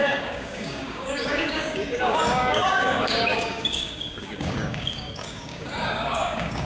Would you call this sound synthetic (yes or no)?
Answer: yes